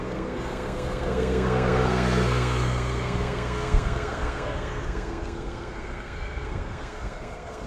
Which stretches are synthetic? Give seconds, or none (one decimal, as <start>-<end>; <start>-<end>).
0.0-7.7